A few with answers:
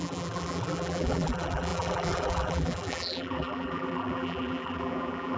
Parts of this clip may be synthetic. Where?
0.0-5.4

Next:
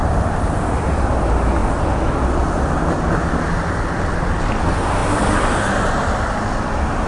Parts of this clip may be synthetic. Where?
5.0-5.9

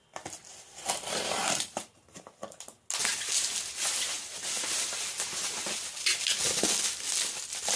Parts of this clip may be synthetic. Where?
0.4-2.3

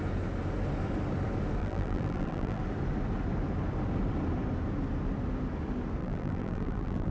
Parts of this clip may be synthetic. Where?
1.6-2.6; 6.0-7.1

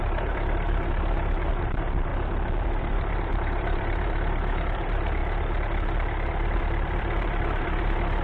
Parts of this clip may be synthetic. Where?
0.0-2.1; 2.8-5.2; 6.5-8.2

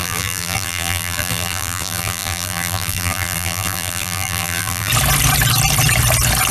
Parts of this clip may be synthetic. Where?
0.0-4.9

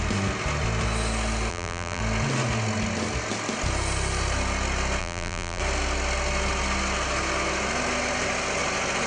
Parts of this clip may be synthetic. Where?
1.5-2.0; 5.0-5.6